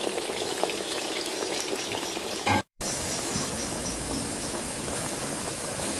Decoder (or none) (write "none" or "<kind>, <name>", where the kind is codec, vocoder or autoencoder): autoencoder, DAC-VAE